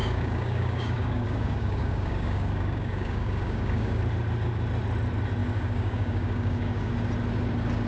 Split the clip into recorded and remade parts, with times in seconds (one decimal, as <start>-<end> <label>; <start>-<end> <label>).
0.0-4.0 remade; 4.0-5.4 recorded; 5.4-6.9 remade; 6.9-7.9 recorded